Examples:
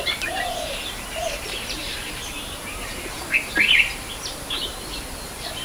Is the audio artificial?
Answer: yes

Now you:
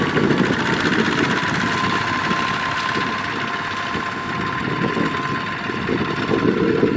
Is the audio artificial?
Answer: no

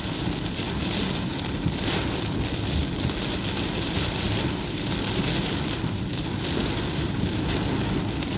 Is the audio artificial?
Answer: no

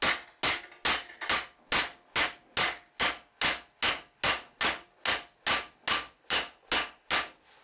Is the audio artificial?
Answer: no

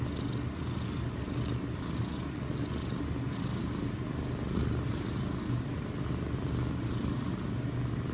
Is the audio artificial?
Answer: no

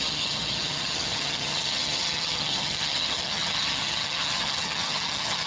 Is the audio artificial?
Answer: yes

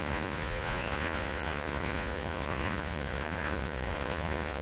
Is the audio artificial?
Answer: yes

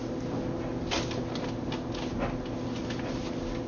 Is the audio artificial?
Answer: no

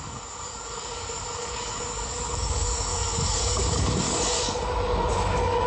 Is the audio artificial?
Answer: yes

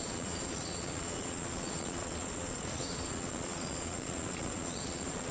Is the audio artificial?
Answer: yes